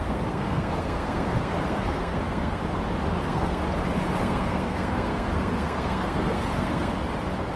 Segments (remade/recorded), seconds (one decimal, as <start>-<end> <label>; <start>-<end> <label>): 0.0-2.6 remade; 2.6-3.2 recorded; 3.2-3.6 remade; 3.6-4.2 recorded; 4.2-6.9 remade; 6.9-7.6 recorded